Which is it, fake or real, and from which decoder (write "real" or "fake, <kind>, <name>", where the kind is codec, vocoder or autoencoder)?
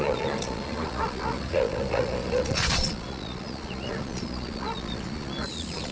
fake, vocoder, Vocos